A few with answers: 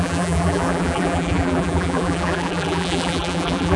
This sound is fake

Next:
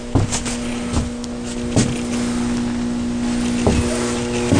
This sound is real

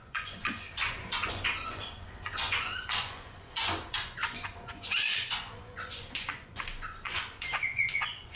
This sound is fake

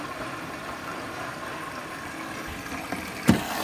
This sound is real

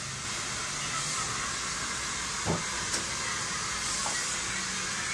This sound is real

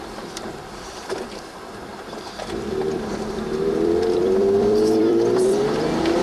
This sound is fake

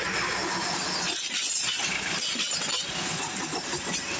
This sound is real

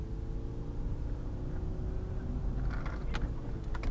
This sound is real